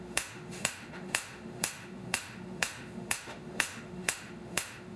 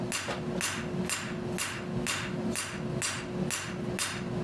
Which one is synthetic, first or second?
first